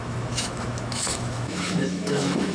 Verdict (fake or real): fake